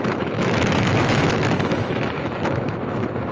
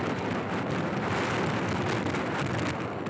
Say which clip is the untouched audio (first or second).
second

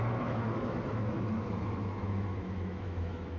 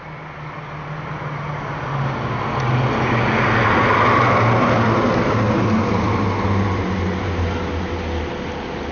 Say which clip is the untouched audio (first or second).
second